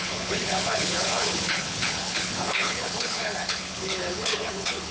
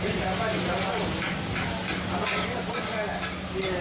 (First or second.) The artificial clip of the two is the first